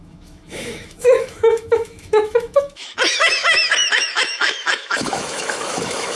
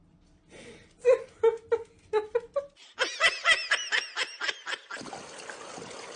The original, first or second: second